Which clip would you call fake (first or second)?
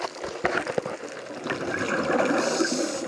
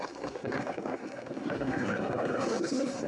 second